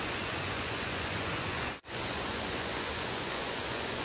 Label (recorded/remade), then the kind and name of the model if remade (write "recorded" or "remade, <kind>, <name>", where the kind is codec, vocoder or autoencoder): remade, vocoder, Vocos